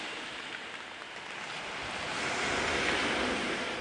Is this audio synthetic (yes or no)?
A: no